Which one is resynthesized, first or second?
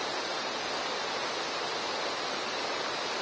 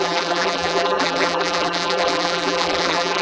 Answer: second